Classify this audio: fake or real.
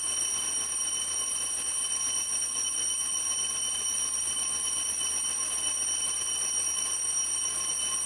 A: real